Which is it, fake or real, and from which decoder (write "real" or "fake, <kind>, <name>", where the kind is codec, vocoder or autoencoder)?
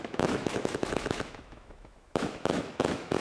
fake, autoencoder, DAC-VAE